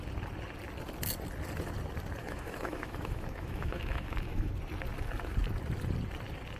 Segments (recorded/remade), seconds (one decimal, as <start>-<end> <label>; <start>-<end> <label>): 0.0-2.2 recorded; 2.2-4.5 remade; 4.5-6.6 recorded